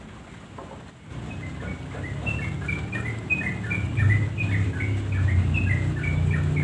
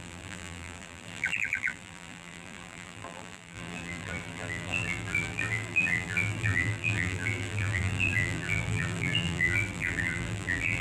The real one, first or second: first